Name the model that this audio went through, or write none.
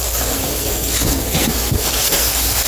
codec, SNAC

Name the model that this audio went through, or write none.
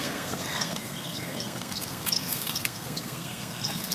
codec, SNAC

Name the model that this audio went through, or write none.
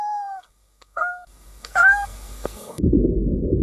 codec, SNAC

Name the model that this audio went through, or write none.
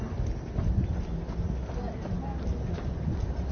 none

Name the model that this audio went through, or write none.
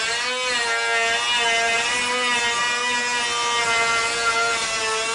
none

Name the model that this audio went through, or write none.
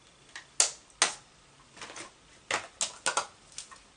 none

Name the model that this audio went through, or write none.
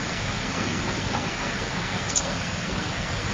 codec, SNAC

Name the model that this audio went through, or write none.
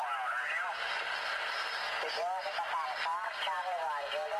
none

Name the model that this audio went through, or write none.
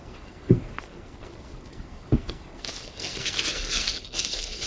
codec, SNAC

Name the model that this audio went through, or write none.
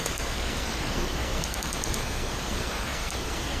codec, SNAC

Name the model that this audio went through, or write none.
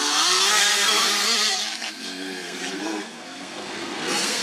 codec, SNAC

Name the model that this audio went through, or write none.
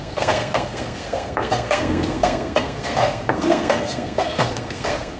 codec, SNAC